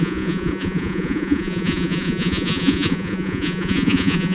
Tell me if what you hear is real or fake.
fake